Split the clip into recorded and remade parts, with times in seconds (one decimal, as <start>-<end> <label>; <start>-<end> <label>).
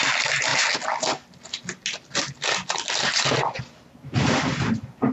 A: 0.0-5.1 recorded